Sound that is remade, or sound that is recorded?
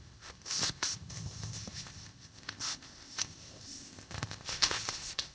remade